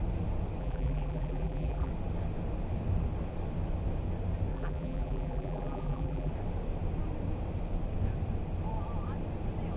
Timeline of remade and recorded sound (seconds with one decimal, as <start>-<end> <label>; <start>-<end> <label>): 0.0-0.6 recorded; 0.6-1.9 remade; 1.9-4.5 recorded; 4.5-6.3 remade; 6.3-9.8 recorded

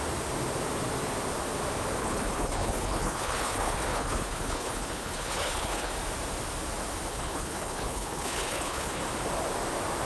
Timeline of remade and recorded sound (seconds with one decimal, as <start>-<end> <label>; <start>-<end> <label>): 0.0-2.0 recorded; 2.0-5.9 remade; 5.9-7.1 recorded; 7.1-9.0 remade; 9.0-10.0 recorded

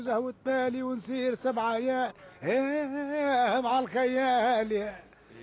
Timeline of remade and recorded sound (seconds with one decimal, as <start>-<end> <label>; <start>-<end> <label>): 0.0-5.4 recorded

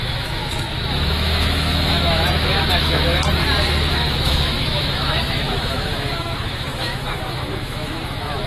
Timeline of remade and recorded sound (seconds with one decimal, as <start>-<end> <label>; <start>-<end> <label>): 0.0-3.4 remade; 3.4-3.9 recorded; 3.9-8.5 remade

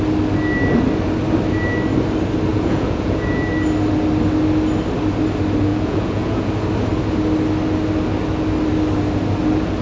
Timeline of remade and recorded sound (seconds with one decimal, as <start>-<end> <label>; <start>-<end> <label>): 0.0-2.5 recorded; 2.5-3.5 remade; 3.5-5.7 recorded; 5.7-6.5 remade; 6.5-9.8 recorded

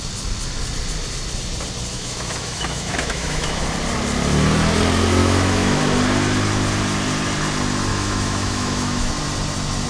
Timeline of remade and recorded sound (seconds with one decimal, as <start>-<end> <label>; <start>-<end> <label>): 0.0-1.9 recorded; 1.9-3.6 remade; 3.6-5.2 recorded; 5.2-5.8 remade; 5.8-7.9 recorded; 7.9-9.1 remade; 9.1-9.9 recorded

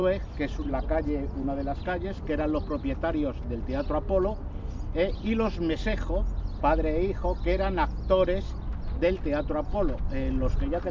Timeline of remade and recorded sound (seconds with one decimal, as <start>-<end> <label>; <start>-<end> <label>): 0.0-10.9 recorded

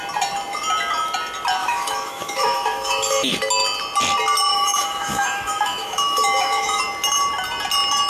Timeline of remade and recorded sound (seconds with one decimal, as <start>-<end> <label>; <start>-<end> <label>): 0.0-1.6 recorded; 1.6-3.3 remade; 3.3-4.5 recorded; 4.5-6.8 remade; 6.8-8.1 recorded